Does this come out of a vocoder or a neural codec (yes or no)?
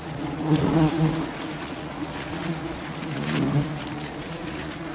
yes